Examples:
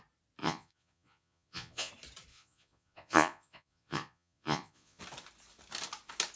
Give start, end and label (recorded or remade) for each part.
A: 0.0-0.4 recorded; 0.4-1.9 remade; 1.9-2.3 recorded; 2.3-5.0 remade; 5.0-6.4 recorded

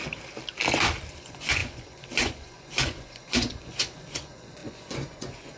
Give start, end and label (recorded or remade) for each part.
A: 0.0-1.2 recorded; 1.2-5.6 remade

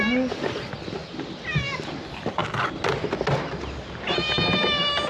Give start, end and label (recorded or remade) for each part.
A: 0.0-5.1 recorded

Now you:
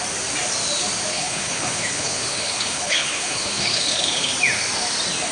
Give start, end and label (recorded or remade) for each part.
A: 0.0-1.1 recorded; 1.1-4.3 remade; 4.3-5.3 recorded